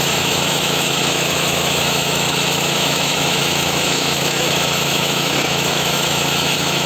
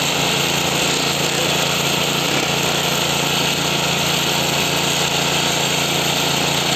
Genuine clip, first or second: second